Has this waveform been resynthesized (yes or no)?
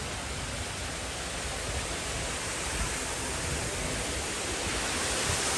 no